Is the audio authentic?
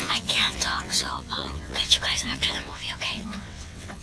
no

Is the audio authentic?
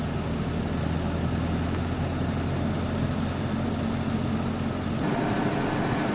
yes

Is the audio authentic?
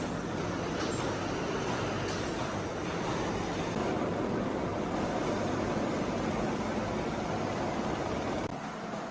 yes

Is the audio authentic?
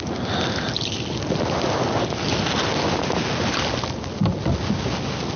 yes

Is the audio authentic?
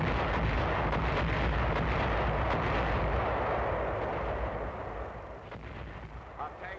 yes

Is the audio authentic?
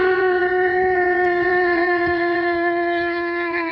no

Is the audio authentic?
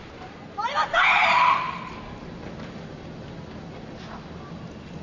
yes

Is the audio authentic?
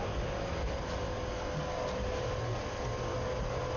yes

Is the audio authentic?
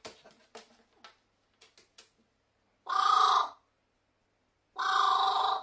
yes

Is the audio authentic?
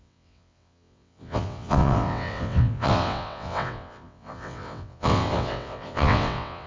no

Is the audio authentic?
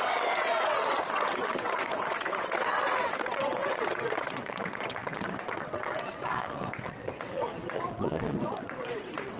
no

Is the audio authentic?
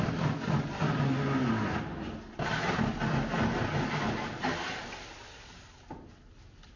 yes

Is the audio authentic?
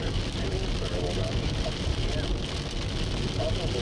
yes